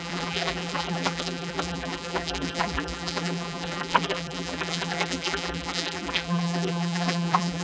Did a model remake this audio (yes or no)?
yes